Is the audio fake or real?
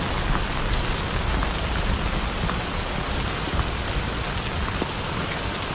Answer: real